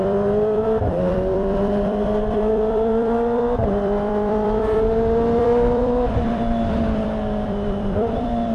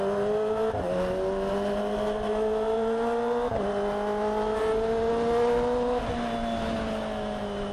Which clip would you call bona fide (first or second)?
second